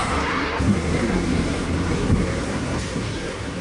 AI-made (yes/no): yes